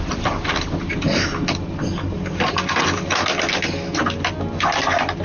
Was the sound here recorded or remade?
recorded